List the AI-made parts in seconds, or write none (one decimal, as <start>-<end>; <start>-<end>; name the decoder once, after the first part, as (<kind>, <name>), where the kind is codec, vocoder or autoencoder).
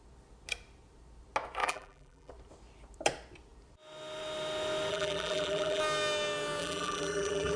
1.6-2.3 (vocoder, BigVGAN v2); 4.9-5.8; 6.6-7.6